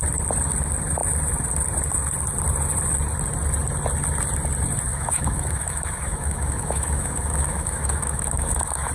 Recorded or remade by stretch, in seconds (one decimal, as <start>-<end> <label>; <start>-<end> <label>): 0.0-4.9 recorded; 4.9-8.9 remade